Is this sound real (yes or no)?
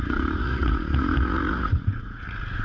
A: no